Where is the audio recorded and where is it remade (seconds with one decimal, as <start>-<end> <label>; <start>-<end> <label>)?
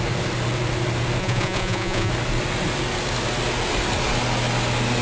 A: 0.0-1.2 recorded; 1.2-2.1 remade; 2.1-5.0 recorded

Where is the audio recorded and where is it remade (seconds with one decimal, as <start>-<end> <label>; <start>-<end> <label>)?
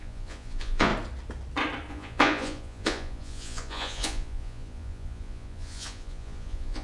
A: 0.0-0.9 remade; 0.9-1.9 recorded; 1.9-6.8 remade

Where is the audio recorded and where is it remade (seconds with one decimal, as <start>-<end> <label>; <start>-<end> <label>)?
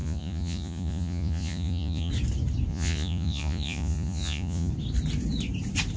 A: 0.0-2.1 remade; 2.1-2.7 recorded; 2.7-4.7 remade; 4.7-6.0 recorded